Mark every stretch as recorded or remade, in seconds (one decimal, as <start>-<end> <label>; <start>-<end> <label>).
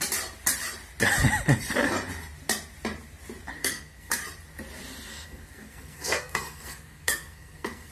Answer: 0.0-3.6 recorded; 3.6-4.2 remade; 4.2-5.1 recorded; 5.1-7.9 remade